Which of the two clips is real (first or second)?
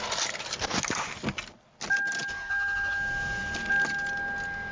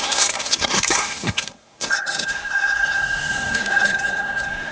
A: first